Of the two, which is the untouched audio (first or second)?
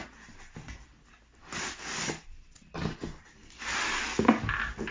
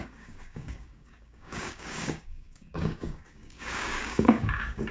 first